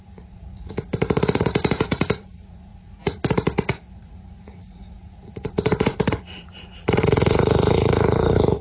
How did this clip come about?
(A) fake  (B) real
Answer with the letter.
A